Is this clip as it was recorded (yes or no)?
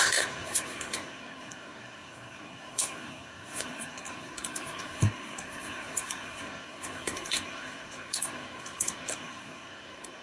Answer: no